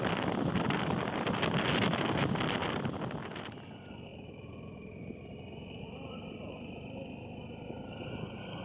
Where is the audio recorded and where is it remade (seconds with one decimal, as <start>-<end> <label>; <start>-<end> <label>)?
0.0-8.6 recorded